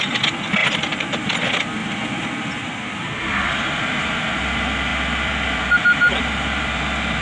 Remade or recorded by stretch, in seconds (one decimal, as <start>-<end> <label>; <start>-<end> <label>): 0.0-0.6 recorded; 0.6-1.2 remade; 1.2-1.8 recorded; 1.8-3.2 remade; 3.2-7.2 recorded